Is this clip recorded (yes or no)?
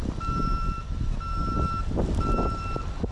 yes